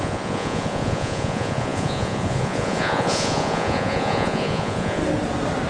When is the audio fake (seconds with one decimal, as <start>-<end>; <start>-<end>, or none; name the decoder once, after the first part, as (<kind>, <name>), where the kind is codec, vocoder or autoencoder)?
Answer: 0.0-5.0 (vocoder, Vocos)